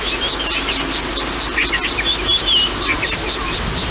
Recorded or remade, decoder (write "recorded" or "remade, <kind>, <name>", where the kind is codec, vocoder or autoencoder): recorded